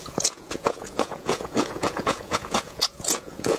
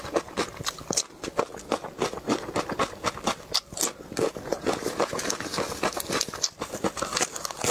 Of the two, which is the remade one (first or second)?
first